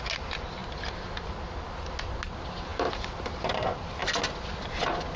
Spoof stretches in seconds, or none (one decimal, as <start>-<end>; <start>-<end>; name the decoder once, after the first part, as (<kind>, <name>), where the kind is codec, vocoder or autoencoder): none